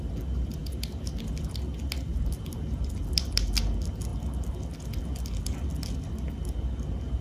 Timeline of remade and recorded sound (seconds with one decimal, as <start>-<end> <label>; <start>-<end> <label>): 0.0-2.1 recorded; 2.1-2.8 remade; 2.8-7.2 recorded